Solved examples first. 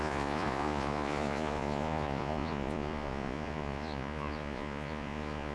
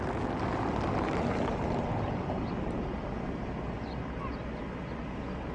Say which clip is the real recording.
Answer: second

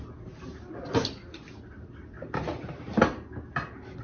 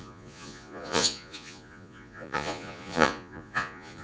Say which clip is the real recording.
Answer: first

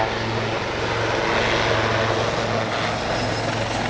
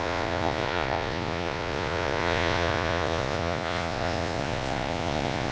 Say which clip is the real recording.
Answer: first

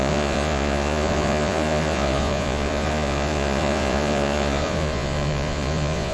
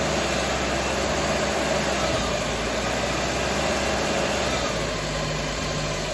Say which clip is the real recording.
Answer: second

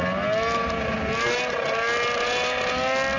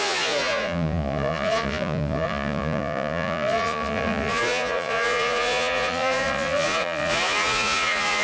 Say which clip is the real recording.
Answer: first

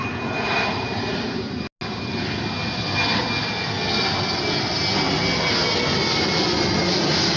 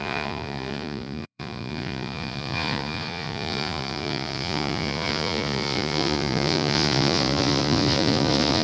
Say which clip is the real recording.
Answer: first